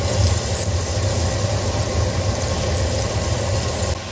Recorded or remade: recorded